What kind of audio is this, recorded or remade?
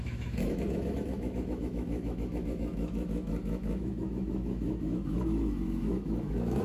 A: remade